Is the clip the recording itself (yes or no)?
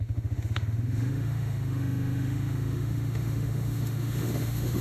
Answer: no